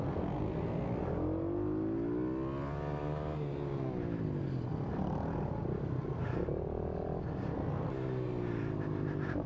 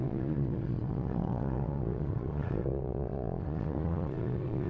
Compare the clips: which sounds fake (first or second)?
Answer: second